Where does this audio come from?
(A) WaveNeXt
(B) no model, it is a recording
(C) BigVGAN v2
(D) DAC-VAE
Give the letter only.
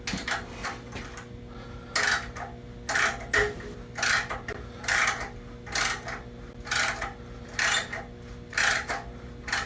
B